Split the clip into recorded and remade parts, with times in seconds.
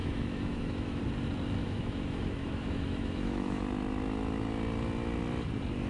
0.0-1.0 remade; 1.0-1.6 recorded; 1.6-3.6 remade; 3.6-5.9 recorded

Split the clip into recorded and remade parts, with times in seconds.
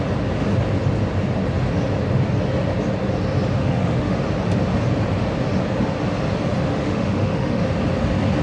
0.0-3.6 recorded; 3.6-4.2 remade; 4.2-6.7 recorded; 6.7-7.6 remade; 7.6-8.4 recorded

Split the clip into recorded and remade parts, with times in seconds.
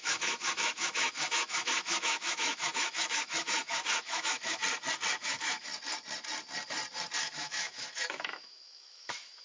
0.0-4.6 remade; 4.6-5.1 recorded; 5.1-5.7 remade; 5.7-7.2 recorded; 7.2-9.4 remade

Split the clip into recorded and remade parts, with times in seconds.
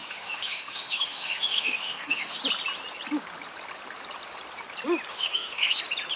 0.0-2.4 remade; 2.4-5.1 recorded; 5.1-5.8 remade; 5.8-6.2 recorded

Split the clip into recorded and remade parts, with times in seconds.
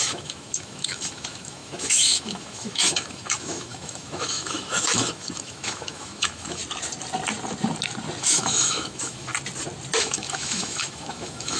0.0-6.6 remade; 6.6-8.2 recorded; 8.2-9.3 remade; 9.3-10.0 recorded; 10.0-11.6 remade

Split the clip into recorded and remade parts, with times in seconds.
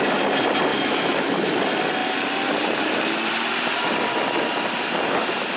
0.0-0.7 recorded; 0.7-1.6 remade; 1.6-5.6 recorded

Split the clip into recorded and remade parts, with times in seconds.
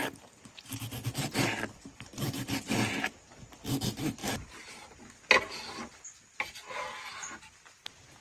0.0-8.2 recorded